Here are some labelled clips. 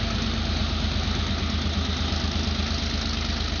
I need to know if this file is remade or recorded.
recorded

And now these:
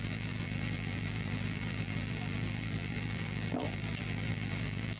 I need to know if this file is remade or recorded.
remade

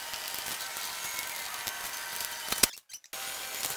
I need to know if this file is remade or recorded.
recorded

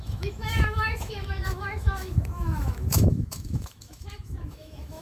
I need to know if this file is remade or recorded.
remade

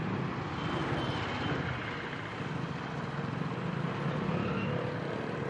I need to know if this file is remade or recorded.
recorded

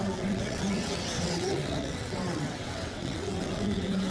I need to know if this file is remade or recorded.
remade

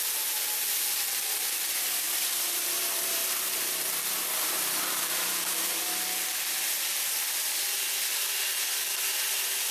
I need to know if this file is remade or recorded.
recorded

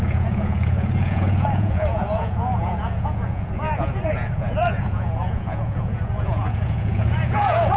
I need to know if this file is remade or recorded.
remade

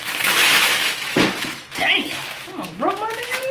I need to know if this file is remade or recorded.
remade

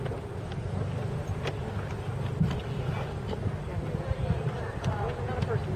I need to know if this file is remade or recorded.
recorded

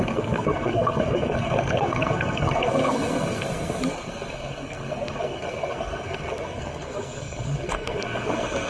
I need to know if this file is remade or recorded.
remade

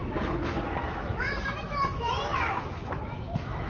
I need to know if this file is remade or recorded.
remade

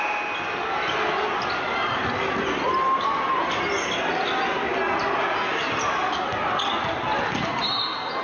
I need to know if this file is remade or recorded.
recorded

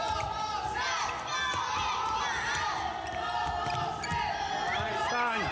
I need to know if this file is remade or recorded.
recorded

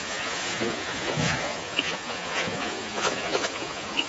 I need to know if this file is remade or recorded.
remade